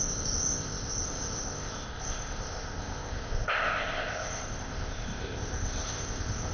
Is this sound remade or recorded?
remade